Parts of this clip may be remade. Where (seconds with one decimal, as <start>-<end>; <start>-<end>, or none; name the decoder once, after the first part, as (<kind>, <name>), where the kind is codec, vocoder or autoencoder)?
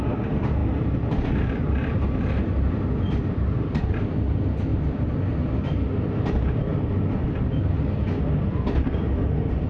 0.6-3.8 (vocoder, BigVGAN v2); 4.7-5.4; 6.7-9.7